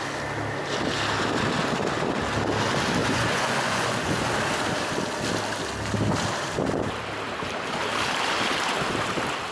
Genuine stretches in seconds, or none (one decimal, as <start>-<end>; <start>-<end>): 0.0-3.0; 4.3-9.5